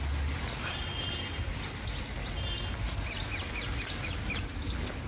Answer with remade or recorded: recorded